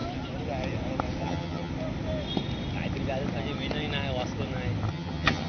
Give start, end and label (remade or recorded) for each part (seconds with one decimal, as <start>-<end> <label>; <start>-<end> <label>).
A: 0.0-1.2 recorded; 1.2-1.7 remade; 1.7-4.9 recorded; 4.9-5.5 remade